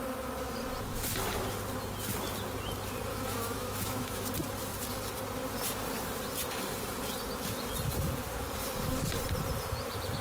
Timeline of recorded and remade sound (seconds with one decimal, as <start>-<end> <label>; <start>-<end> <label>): 0.0-3.1 recorded; 3.1-4.3 remade; 4.3-10.2 recorded